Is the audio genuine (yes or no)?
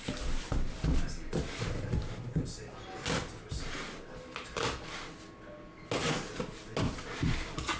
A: yes